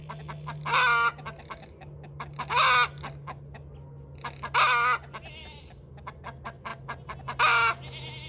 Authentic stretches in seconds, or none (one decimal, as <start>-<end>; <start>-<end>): 0.0-8.3